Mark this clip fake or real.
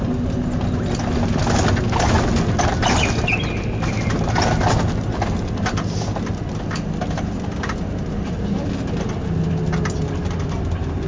real